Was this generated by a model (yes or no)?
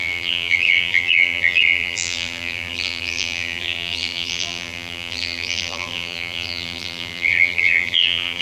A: yes